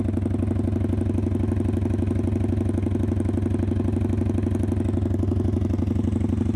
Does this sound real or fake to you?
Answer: real